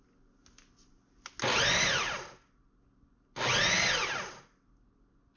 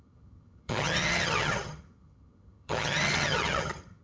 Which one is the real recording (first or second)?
first